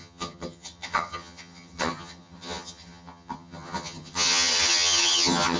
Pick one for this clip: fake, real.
fake